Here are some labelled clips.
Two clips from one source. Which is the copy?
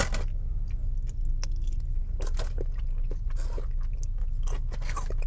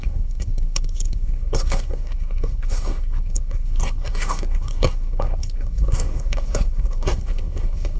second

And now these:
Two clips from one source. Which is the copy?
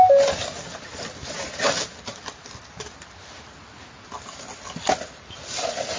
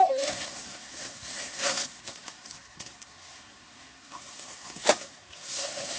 second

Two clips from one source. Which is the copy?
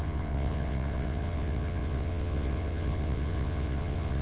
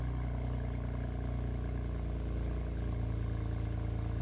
first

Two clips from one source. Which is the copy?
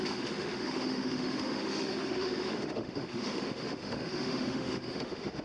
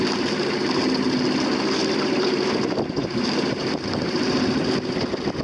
first